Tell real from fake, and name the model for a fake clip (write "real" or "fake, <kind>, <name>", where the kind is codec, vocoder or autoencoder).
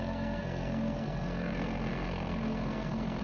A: fake, codec, SNAC